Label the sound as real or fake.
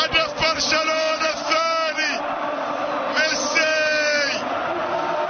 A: real